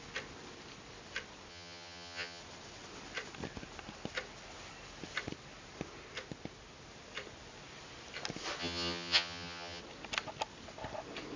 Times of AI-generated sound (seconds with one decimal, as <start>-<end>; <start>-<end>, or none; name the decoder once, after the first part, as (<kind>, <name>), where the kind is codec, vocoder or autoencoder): 1.5-2.4 (vocoder, HiFi-GAN); 8.6-9.8